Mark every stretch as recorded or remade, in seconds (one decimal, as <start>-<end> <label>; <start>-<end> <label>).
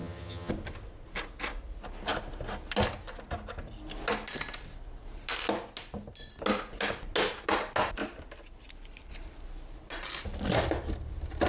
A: 0.0-0.5 remade; 0.5-11.5 recorded